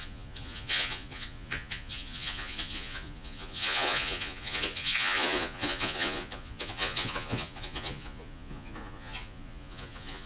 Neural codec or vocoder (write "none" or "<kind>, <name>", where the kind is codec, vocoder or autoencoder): vocoder, Vocos